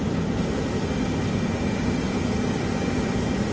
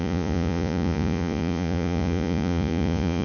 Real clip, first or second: first